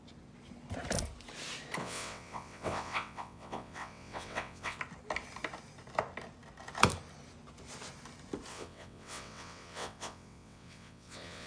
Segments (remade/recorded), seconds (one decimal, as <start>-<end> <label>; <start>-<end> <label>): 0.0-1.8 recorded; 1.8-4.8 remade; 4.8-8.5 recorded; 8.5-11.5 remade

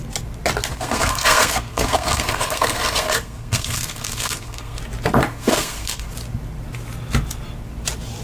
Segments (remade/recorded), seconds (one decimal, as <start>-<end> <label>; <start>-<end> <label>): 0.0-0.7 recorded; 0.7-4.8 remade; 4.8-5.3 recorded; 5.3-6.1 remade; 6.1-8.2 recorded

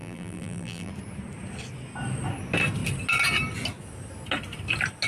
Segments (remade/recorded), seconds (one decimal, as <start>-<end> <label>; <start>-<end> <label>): 0.0-0.9 remade; 0.9-5.1 recorded

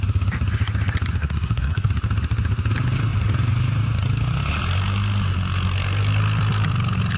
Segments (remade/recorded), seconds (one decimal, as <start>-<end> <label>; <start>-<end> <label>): 0.0-1.2 recorded; 1.2-1.9 remade; 1.9-7.2 recorded

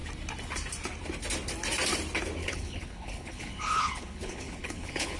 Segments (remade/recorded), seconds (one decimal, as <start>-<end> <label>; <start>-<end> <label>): 0.0-2.4 recorded; 2.4-5.2 remade

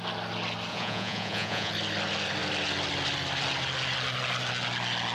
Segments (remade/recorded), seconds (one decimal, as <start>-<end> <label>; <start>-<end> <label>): 0.0-0.7 recorded; 0.7-1.7 remade; 1.7-5.1 recorded

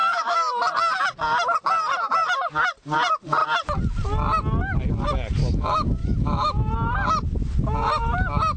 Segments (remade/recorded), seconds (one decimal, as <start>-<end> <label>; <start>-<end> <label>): 0.0-0.6 remade; 0.6-5.4 recorded; 5.4-6.7 remade; 6.7-8.6 recorded